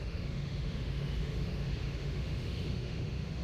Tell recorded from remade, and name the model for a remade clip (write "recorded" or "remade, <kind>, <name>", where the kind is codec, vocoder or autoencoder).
remade, autoencoder, DAC-VAE